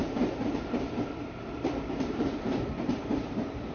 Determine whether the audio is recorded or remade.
remade